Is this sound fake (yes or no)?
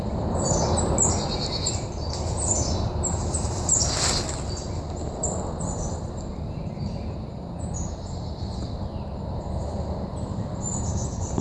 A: no